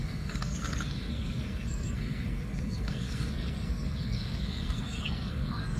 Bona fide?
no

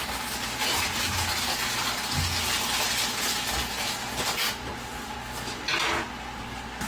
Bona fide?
yes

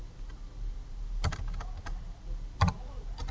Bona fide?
yes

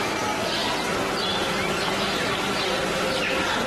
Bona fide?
yes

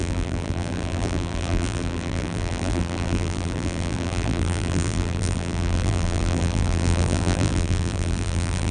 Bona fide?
no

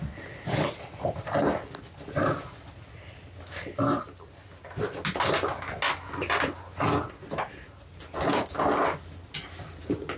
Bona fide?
yes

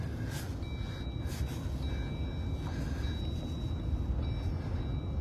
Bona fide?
yes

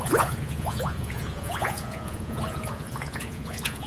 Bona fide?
no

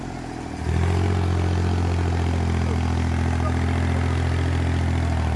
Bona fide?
yes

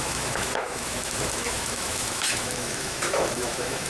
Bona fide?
no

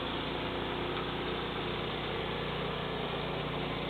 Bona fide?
yes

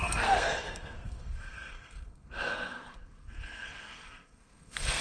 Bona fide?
no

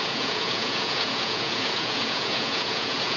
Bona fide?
no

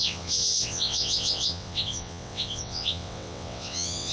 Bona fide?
no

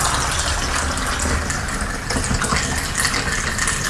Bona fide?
yes